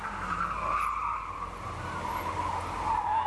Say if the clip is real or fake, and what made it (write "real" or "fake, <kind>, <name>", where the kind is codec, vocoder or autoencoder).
real